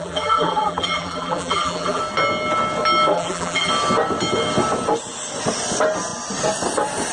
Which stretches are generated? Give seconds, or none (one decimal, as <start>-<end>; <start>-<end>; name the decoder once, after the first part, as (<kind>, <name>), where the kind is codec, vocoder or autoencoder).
0.0-2.0 (vocoder, BigVGAN v2); 3.1-3.7